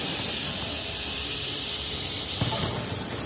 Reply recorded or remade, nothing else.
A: remade